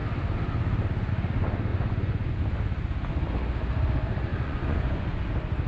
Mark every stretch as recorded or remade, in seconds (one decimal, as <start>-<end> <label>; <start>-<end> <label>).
0.0-1.7 recorded; 1.7-2.4 remade; 2.4-4.3 recorded; 4.3-5.2 remade; 5.2-5.7 recorded